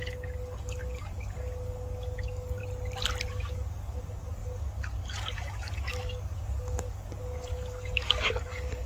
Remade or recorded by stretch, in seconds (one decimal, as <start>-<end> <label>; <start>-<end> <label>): 0.0-2.6 remade; 2.6-3.3 recorded; 3.3-8.9 remade